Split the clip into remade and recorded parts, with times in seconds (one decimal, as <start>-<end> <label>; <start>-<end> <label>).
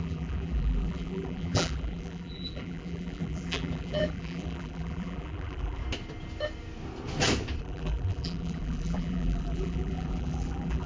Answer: 0.0-5.8 remade; 5.8-7.6 recorded; 7.6-10.9 remade